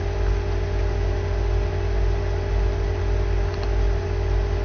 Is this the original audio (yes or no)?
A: yes